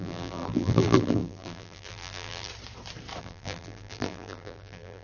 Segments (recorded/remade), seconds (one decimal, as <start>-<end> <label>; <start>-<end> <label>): 0.0-2.5 remade; 2.5-3.2 recorded; 3.2-5.0 remade